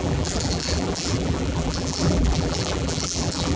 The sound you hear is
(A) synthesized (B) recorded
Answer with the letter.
A